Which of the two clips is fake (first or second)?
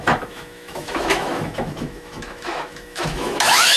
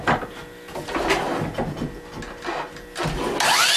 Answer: first